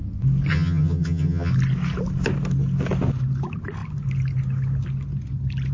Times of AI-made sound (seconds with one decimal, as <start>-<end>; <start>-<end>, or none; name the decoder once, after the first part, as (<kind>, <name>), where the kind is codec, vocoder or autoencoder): 0.5-1.5 (vocoder, HiFi-GAN)